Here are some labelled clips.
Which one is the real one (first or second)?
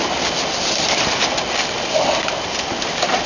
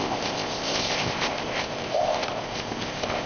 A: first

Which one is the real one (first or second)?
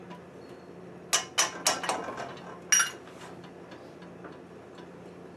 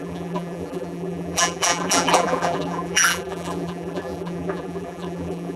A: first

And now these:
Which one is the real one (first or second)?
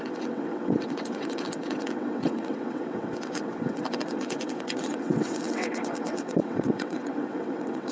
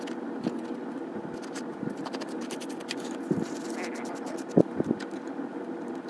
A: second